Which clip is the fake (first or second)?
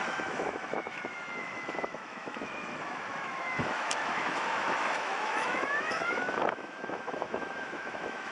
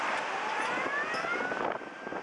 first